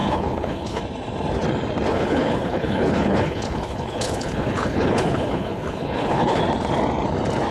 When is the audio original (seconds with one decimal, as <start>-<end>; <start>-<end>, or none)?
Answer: 0.8-1.9; 6.4-7.5